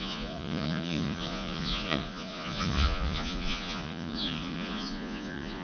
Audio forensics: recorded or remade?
remade